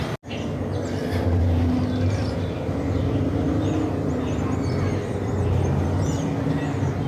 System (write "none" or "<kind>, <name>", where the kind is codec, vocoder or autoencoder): none